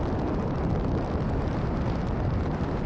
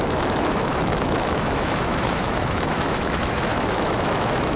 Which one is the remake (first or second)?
second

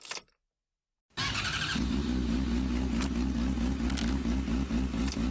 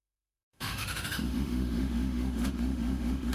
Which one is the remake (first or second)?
second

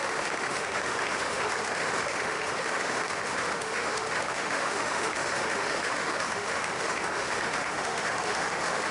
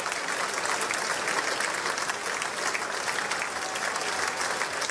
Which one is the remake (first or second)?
first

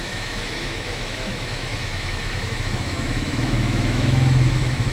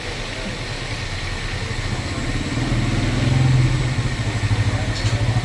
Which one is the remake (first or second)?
first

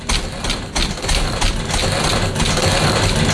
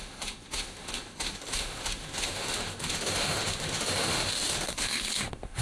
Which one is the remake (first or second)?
second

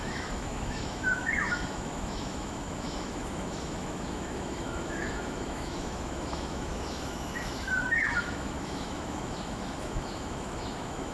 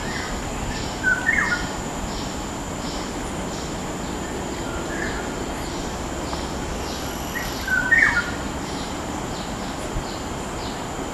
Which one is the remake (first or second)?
first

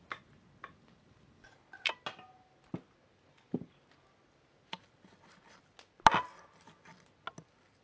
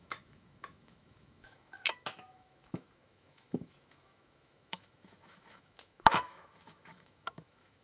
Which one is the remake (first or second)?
second